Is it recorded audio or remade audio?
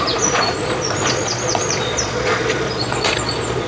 remade